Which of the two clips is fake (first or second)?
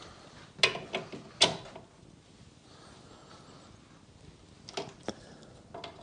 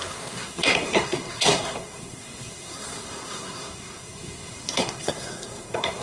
second